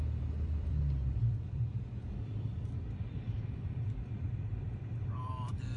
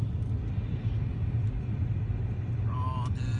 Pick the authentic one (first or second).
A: second